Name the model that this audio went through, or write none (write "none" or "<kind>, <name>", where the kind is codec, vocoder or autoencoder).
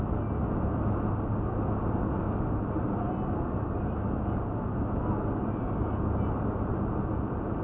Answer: none